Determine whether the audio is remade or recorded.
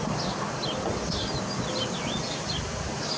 recorded